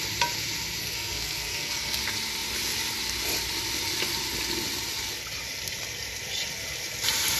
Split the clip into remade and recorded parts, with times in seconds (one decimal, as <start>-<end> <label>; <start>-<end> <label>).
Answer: 0.0-0.8 recorded; 0.8-2.0 remade; 2.0-7.4 recorded